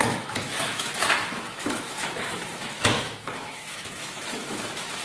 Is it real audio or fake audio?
fake